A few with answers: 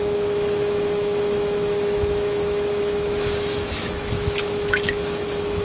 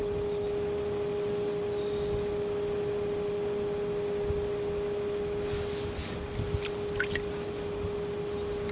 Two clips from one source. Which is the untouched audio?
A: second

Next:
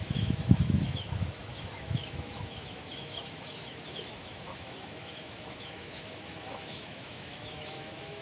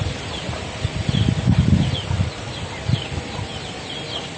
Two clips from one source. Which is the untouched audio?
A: second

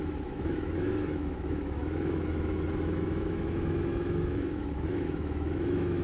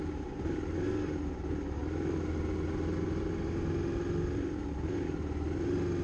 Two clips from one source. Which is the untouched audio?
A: second